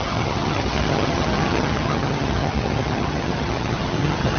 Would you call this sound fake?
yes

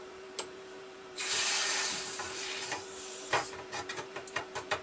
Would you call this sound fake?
yes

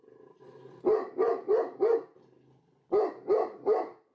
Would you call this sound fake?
no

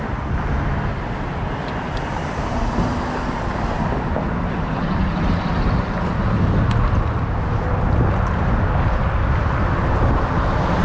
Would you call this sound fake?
no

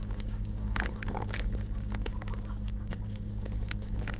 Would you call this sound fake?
yes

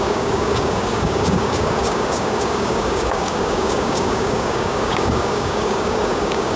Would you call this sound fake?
yes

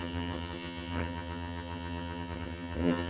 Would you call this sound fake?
yes